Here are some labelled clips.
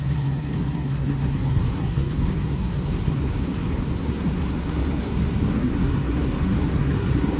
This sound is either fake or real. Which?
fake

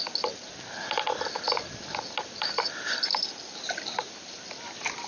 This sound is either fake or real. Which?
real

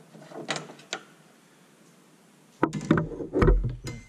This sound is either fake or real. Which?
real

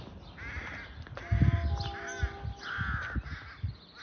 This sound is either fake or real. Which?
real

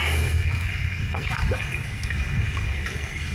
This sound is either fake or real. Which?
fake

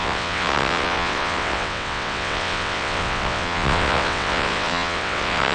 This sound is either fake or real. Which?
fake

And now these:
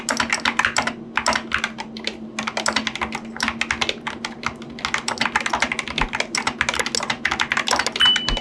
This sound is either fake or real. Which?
real